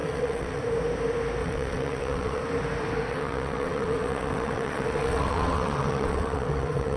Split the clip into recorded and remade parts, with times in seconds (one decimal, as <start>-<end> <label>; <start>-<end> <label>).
0.0-0.6 remade; 0.6-1.4 recorded; 1.4-2.4 remade; 2.4-3.1 recorded; 3.1-7.0 remade